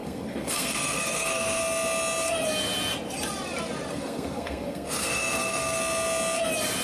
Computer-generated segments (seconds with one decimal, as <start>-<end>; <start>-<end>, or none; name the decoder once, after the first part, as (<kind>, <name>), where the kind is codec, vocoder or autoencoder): 0.0-1.6 (codec, SNAC); 3.9-5.8